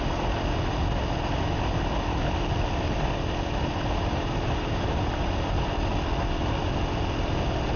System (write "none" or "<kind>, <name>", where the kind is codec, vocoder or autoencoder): none